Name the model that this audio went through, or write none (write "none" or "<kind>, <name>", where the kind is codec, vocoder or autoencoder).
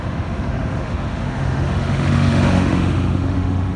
autoencoder, DAC-VAE